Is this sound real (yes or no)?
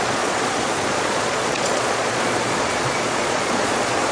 no